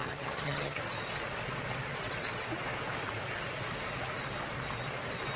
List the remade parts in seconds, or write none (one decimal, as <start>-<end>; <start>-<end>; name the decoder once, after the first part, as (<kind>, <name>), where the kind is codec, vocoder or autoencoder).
0.0-0.8 (vocoder, HiFi-GAN)